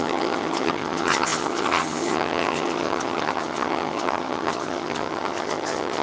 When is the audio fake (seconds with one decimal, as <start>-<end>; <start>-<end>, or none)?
0.0-6.0